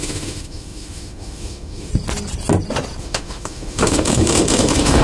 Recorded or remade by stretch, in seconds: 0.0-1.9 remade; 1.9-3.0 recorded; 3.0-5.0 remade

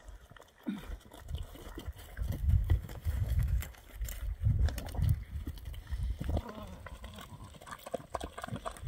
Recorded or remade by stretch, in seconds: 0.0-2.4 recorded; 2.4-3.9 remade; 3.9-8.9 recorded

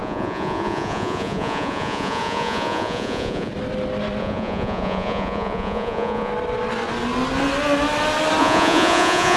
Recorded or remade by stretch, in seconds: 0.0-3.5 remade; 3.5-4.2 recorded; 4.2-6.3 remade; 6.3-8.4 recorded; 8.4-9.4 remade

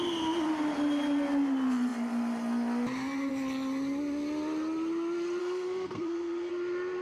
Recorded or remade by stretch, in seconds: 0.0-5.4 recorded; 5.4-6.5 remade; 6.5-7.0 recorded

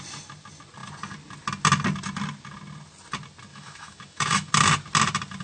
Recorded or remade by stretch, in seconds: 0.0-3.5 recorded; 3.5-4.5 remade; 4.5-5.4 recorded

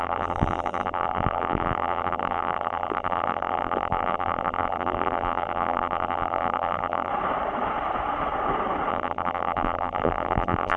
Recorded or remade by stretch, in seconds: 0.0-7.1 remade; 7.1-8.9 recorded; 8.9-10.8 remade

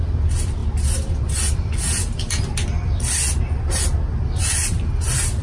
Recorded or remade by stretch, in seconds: 0.0-5.4 recorded